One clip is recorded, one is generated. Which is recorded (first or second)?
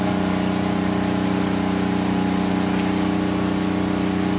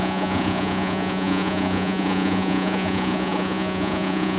first